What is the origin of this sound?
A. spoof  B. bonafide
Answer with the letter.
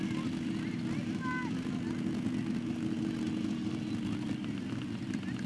B